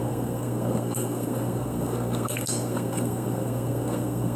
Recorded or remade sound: remade